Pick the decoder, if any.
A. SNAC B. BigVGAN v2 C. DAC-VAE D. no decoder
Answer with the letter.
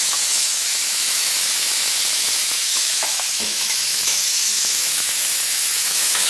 C